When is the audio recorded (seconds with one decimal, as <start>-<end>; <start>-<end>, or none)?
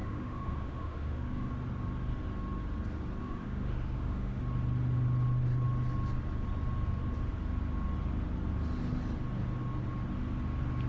1.5-3.2; 4.4-10.9